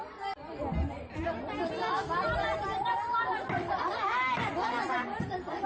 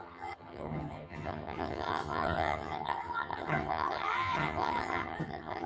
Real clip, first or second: first